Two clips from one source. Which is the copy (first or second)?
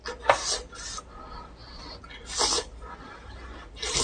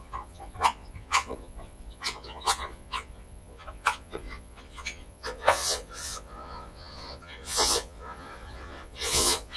second